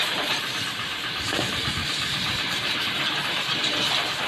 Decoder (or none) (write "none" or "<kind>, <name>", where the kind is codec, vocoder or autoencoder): vocoder, BigVGAN v2